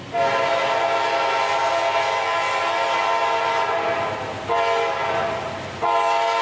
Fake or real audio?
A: real